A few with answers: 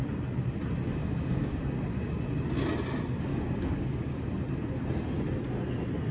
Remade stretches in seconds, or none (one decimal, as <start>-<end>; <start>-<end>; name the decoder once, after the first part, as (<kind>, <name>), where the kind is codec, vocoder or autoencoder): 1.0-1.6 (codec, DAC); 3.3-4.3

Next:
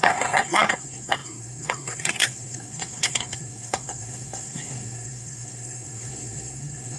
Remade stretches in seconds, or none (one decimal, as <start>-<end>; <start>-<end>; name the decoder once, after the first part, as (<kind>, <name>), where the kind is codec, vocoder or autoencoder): 0.0-7.0 (codec, SNAC)

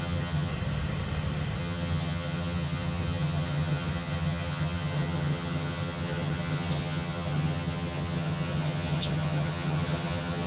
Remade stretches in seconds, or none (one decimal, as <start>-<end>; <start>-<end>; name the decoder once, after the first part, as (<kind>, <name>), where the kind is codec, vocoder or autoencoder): 0.0-0.5 (vocoder, HiFi-GAN); 1.6-10.5